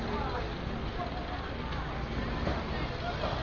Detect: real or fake real